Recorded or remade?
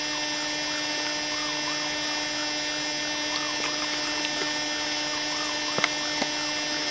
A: recorded